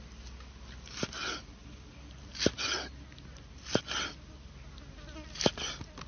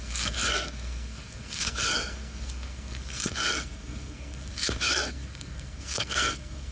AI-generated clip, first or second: second